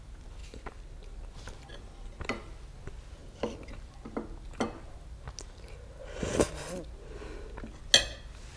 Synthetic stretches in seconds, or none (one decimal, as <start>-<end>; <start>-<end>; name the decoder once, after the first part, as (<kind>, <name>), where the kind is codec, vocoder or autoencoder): none